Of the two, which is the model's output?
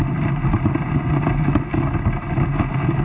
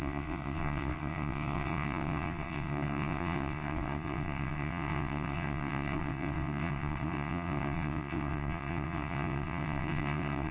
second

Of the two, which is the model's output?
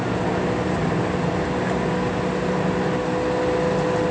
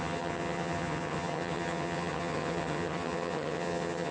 second